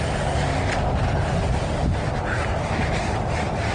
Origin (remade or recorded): recorded